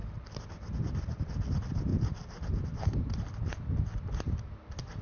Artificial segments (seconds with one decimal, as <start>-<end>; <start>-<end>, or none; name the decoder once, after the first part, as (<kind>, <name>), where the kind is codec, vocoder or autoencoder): none